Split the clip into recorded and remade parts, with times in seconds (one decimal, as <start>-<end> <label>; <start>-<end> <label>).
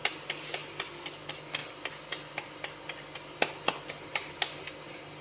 0.0-5.2 recorded